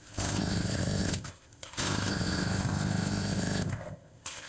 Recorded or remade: remade